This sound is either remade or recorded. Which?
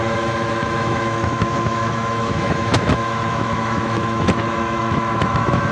remade